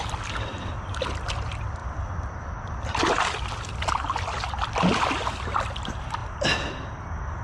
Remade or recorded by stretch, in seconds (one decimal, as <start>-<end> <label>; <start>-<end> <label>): 0.0-7.4 recorded

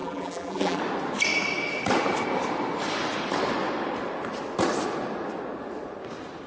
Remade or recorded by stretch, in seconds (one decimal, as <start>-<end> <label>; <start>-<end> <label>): 0.0-0.8 remade; 0.8-6.5 recorded

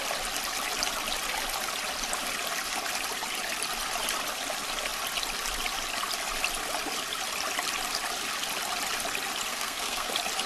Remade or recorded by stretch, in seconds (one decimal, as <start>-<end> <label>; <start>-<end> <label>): 0.0-9.5 recorded; 9.5-10.1 remade; 10.1-10.5 recorded

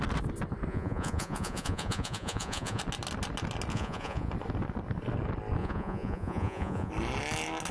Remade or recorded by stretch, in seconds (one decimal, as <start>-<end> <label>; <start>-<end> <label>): 0.0-0.7 recorded; 0.7-2.8 remade; 2.8-3.7 recorded; 3.7-4.3 remade; 4.3-5.6 recorded; 5.6-6.9 remade; 6.9-7.7 recorded

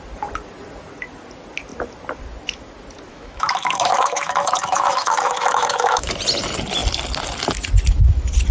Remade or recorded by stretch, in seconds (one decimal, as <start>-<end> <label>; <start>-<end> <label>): 0.0-3.1 recorded; 3.1-6.1 remade; 6.1-8.5 recorded